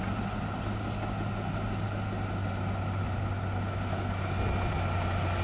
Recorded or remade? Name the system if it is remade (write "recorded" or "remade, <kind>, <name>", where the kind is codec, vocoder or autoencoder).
recorded